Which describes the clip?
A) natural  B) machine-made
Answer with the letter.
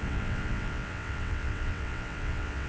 B